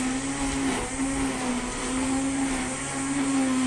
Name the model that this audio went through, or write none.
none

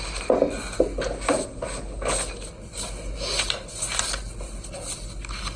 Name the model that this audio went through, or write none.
none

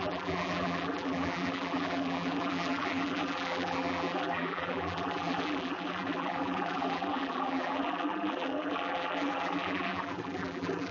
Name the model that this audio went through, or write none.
vocoder, BigVGAN v2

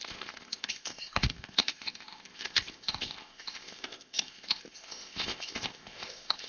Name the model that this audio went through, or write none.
codec, ZipCodec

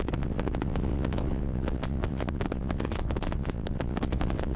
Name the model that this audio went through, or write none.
vocoder, WaveNeXt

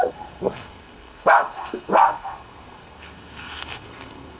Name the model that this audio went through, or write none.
codec, SNAC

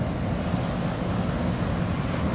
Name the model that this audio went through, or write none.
none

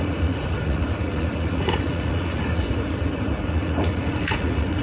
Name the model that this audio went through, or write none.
vocoder, Vocos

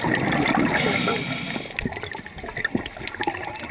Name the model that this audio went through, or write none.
none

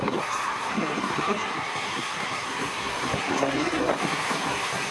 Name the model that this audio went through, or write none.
codec, SNAC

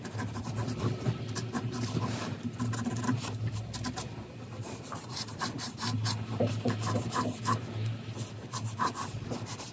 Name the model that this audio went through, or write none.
vocoder, BigVGAN v2